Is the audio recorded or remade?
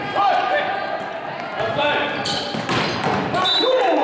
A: recorded